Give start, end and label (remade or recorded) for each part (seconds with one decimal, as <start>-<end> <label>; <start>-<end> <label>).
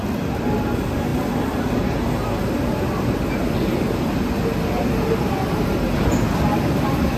0.0-7.2 recorded